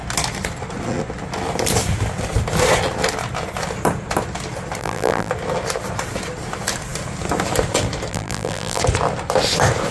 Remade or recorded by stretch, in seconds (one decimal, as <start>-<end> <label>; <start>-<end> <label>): 0.0-4.8 recorded; 4.8-5.3 remade; 5.3-8.1 recorded; 8.1-8.8 remade; 8.8-9.9 recorded